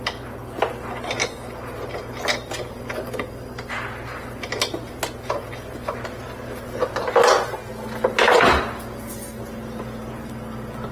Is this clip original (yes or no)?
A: yes